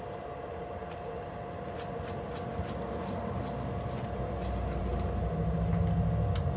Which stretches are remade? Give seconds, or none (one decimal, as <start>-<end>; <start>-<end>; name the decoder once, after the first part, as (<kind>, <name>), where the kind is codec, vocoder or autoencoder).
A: none